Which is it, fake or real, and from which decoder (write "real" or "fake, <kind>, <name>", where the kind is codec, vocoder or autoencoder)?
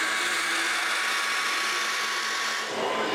real